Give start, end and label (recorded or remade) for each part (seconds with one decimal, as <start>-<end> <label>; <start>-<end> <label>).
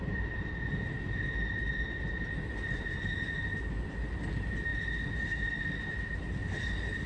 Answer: 0.0-7.1 recorded